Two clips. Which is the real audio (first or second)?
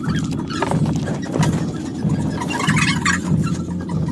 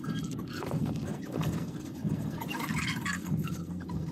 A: first